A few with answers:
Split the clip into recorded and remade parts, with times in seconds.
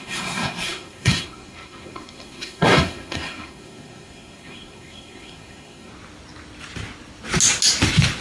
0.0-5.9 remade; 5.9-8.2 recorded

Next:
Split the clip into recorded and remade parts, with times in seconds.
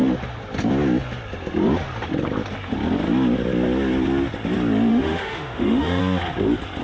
0.0-4.9 recorded; 4.9-6.0 remade; 6.0-6.8 recorded